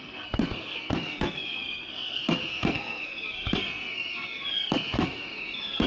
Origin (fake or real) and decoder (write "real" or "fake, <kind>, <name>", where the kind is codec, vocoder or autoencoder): fake, codec, SNAC